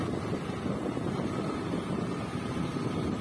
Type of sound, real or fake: real